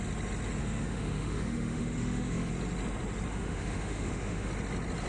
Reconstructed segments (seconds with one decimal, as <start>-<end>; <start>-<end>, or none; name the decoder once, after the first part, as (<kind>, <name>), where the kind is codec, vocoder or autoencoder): 0.6-2.5 (autoencoder, DAC-VAE); 3.3-4.5